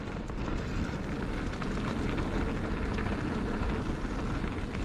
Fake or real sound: real